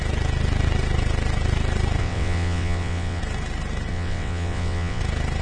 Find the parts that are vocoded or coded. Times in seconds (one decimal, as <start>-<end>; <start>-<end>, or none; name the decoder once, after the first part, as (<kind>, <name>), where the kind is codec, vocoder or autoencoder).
2.0-3.2 (vocoder, WaveNeXt); 3.9-5.0